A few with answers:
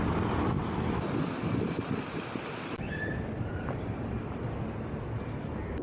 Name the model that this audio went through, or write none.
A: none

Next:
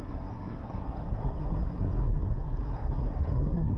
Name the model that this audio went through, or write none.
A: codec, SNAC